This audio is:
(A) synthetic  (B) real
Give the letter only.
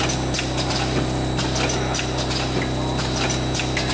B